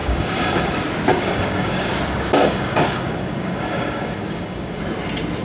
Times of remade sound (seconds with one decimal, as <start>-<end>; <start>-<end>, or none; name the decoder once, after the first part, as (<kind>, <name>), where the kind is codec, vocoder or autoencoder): 0.0-0.7 (codec, DAC); 1.1-1.9; 2.4-4.8